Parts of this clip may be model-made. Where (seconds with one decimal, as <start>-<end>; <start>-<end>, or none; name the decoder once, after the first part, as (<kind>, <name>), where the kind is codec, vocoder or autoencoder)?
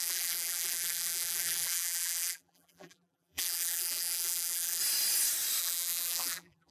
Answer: 0.0-4.8 (vocoder, BigVGAN v2); 5.6-6.7